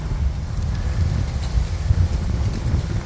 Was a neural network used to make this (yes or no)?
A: no